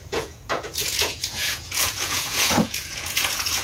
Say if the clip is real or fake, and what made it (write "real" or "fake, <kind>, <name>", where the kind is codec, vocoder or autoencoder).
fake, vocoder, Vocos